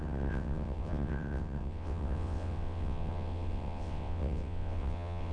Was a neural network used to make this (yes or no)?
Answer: yes